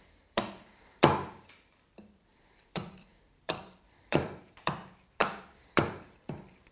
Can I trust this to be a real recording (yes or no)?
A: no